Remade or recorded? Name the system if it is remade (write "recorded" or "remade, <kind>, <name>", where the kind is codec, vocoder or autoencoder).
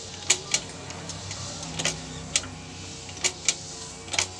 recorded